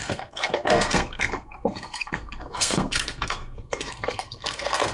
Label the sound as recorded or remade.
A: remade